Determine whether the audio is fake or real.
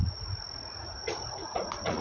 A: fake